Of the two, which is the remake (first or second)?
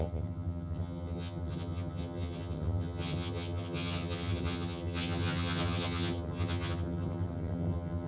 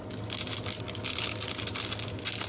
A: first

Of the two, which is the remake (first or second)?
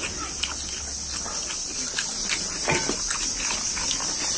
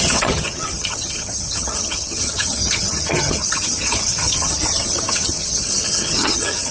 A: second